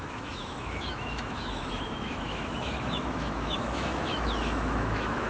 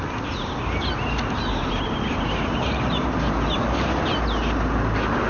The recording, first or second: second